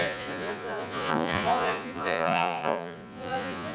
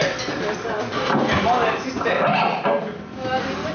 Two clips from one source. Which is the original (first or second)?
second